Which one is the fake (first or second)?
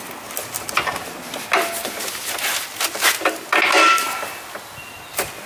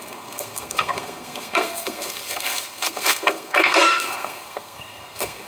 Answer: second